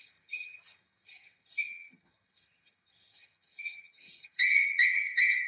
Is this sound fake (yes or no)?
yes